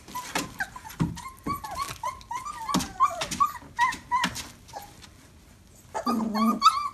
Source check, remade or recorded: recorded